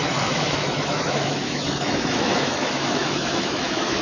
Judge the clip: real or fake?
fake